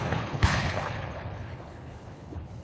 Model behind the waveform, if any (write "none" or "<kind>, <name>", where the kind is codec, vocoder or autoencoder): codec, HILCodec